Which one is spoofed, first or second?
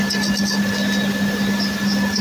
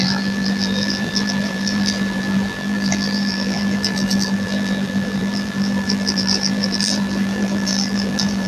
second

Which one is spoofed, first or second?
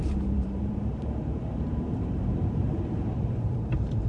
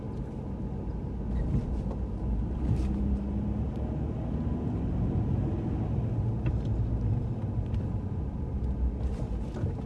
first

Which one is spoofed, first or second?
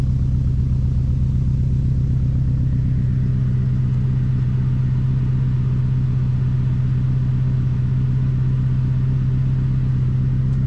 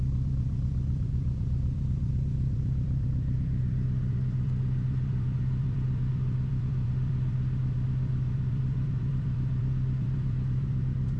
second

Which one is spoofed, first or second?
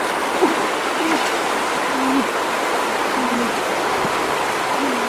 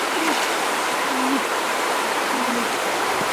second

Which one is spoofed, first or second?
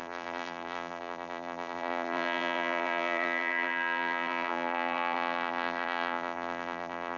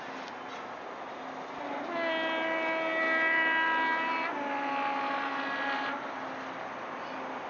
first